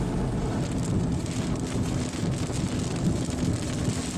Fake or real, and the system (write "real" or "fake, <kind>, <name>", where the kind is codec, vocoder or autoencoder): real